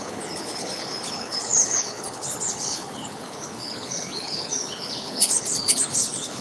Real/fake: fake